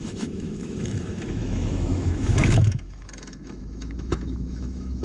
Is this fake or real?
fake